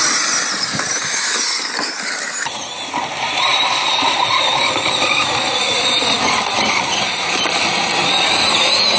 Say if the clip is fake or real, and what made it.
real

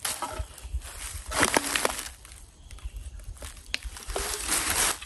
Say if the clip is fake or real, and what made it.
real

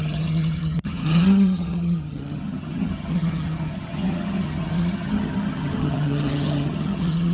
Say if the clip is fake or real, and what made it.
fake, vocoder, HiFi-GAN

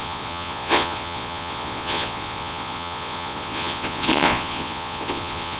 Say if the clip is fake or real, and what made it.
fake, vocoder, Vocos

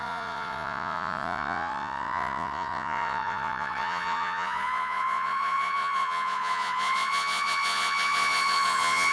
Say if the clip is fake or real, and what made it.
fake, vocoder, Vocos